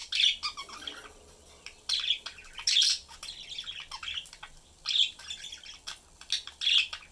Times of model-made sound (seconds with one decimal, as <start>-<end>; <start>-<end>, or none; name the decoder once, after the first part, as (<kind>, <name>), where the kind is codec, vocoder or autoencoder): none